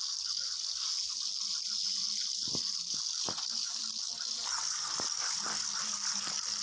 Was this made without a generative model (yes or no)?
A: yes